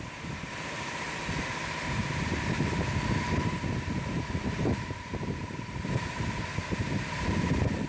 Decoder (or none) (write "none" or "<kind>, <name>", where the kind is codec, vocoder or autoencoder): vocoder, BigVGAN v2